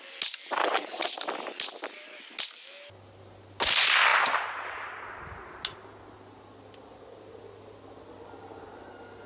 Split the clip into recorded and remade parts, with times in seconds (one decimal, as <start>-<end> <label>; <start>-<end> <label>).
0.0-0.6 recorded; 0.6-1.2 remade; 1.2-9.3 recorded